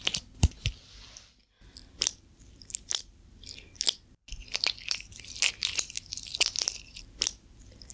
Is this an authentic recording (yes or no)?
no